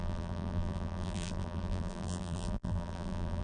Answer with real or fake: fake